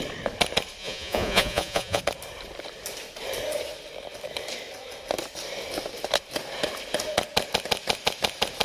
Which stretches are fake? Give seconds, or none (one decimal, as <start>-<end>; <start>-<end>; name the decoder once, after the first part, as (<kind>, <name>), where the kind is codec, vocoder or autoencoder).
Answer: 0.8-2.0 (vocoder, Vocos)

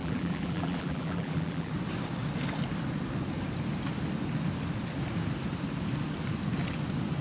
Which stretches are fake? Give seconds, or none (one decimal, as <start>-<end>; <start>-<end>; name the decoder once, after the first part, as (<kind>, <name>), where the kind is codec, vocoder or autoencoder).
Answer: 0.0-1.7 (vocoder, BigVGAN v2)

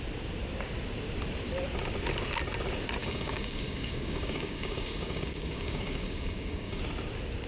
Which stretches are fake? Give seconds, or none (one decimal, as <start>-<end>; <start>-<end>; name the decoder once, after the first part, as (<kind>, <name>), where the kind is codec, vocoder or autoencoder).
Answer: 3.0-6.8 (codec, DAC)

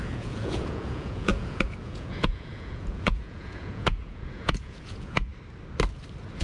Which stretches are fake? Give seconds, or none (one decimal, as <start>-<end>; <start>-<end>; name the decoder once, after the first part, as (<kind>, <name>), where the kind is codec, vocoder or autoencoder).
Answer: 0.0-5.3 (vocoder, Vocos)

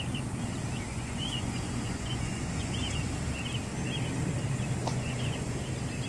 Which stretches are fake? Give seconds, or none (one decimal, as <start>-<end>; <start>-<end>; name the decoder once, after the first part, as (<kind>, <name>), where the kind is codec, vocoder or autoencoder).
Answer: 0.9-3.1 (vocoder, Vocos); 4.8-5.6

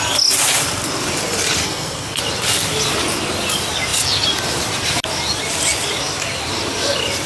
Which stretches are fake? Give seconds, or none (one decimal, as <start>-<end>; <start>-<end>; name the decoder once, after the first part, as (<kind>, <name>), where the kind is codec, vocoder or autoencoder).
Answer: 1.6-2.2 (codec, SNAC)

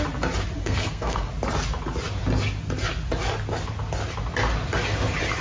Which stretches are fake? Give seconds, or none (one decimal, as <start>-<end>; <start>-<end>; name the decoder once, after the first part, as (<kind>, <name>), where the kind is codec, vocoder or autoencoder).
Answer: 0.6-1.3 (codec, SNAC)

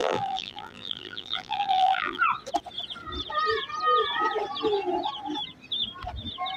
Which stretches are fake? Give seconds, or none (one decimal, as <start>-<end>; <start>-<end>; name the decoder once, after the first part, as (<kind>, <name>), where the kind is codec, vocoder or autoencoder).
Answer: 0.0-2.2 (vocoder, BigVGAN v2)